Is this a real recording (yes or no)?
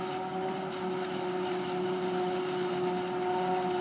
yes